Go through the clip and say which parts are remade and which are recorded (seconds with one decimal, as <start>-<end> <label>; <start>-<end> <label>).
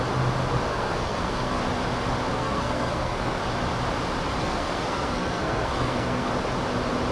0.0-0.7 recorded; 0.7-1.6 remade; 1.6-2.3 recorded; 2.3-3.4 remade; 3.4-4.4 recorded; 4.4-6.3 remade; 6.3-7.1 recorded